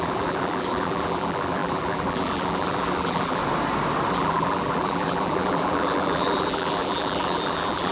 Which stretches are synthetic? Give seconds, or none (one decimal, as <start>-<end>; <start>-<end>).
0.0-3.4; 4.1-7.9